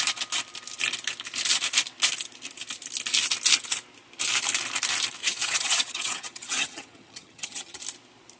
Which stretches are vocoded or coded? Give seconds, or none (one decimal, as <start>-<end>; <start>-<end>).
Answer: 5.2-7.8